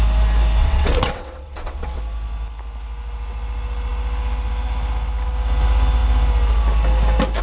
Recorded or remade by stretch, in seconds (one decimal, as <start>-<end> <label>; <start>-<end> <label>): 0.0-0.6 recorded; 0.6-2.0 remade; 2.0-7.4 recorded